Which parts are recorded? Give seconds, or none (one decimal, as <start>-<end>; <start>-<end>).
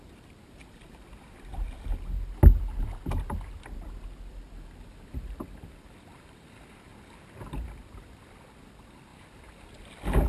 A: 1.5-5.1; 6.9-7.7